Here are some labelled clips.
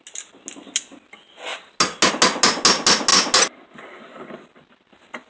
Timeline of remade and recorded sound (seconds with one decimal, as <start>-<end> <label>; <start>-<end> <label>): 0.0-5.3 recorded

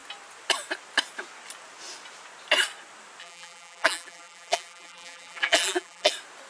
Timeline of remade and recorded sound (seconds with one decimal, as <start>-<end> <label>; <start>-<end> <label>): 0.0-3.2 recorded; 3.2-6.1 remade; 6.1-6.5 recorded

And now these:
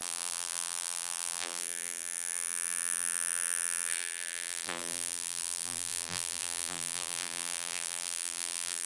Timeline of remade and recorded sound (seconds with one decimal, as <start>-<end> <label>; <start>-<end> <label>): 0.0-8.9 remade

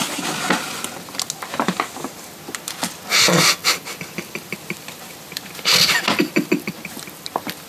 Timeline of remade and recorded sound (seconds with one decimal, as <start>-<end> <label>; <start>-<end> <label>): 0.0-3.6 recorded; 3.6-6.9 remade; 6.9-7.7 recorded

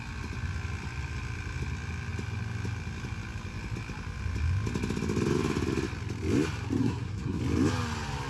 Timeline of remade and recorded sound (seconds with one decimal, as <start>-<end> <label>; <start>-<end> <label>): 0.0-6.8 recorded; 6.8-7.4 remade; 7.4-8.3 recorded

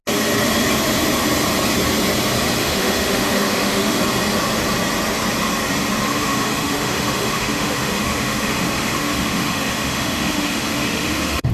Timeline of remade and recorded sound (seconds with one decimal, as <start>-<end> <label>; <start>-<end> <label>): 0.0-2.6 recorded; 2.6-4.0 remade; 4.0-6.1 recorded; 6.1-11.5 remade

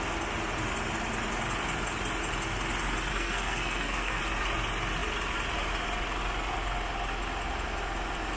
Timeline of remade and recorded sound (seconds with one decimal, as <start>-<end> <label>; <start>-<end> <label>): 0.0-3.1 recorded; 3.1-4.2 remade; 4.2-8.4 recorded